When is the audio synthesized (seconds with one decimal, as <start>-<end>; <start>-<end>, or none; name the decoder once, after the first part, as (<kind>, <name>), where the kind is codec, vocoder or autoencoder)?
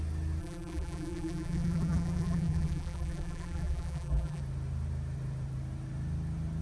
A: 0.4-4.4 (vocoder, BigVGAN v2)